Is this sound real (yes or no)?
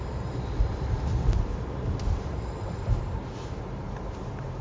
no